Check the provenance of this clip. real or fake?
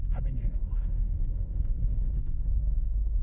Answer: fake